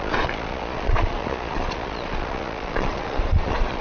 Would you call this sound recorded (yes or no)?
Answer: no